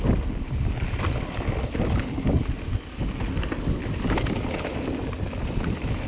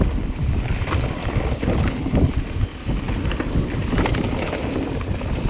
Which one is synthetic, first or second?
second